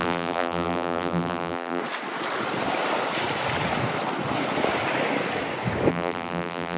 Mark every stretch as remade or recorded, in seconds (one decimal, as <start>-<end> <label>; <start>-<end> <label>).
0.0-1.8 remade; 1.8-5.9 recorded; 5.9-6.8 remade